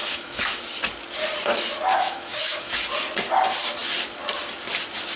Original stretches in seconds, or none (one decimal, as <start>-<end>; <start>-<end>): 0.6-1.9; 2.7-5.2